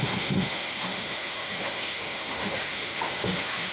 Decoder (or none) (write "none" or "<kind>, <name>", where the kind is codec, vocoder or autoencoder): autoencoder, DAC-VAE